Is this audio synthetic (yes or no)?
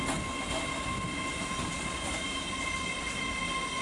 no